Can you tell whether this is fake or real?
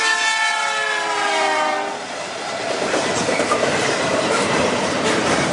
fake